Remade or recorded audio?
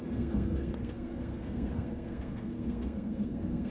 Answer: remade